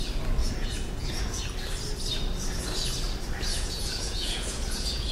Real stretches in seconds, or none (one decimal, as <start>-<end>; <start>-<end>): 0.0-0.4; 1.4-3.5